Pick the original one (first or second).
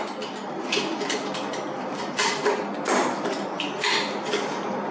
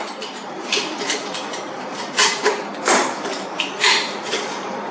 first